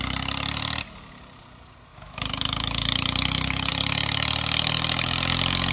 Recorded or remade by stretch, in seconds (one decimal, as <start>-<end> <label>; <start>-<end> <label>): 0.0-1.9 recorded; 1.9-3.7 remade; 3.7-5.7 recorded